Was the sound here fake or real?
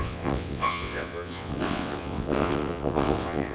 fake